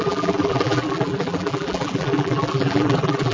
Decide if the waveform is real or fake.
fake